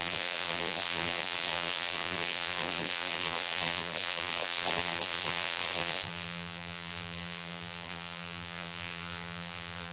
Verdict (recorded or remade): remade